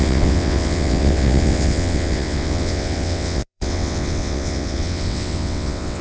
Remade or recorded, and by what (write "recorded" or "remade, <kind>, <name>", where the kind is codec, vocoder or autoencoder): remade, vocoder, WaveNeXt